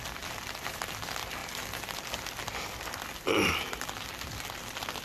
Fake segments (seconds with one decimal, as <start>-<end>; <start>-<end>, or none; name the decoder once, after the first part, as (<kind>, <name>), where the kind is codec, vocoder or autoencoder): none